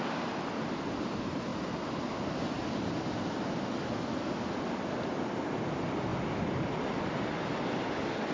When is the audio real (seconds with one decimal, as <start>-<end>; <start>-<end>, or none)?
0.0-1.5; 3.4-6.1; 6.9-8.3